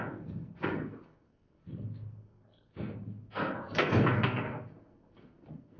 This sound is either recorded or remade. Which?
remade